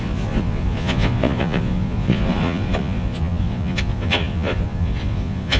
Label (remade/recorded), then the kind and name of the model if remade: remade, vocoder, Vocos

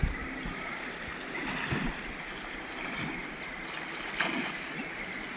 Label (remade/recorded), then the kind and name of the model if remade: recorded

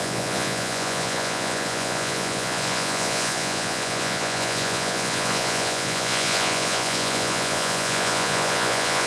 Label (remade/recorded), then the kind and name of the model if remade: remade, vocoder, Vocos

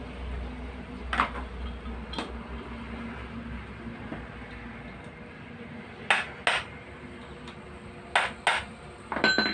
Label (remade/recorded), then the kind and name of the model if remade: recorded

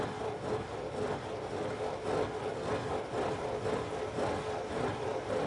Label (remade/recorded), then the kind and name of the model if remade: recorded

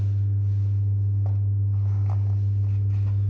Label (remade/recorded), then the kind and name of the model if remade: recorded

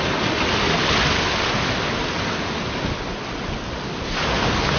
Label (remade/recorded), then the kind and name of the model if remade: recorded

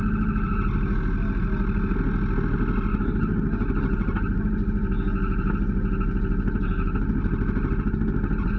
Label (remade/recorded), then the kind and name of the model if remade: recorded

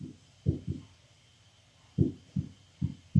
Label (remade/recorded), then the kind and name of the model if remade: recorded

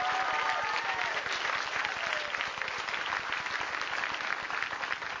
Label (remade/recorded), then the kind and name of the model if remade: recorded